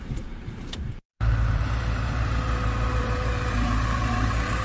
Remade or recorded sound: remade